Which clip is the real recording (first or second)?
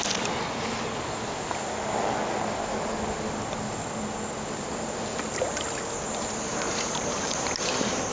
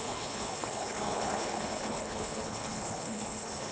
first